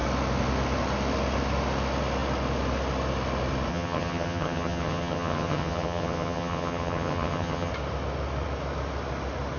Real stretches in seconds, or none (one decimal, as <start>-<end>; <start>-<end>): 0.0-3.7; 7.7-9.6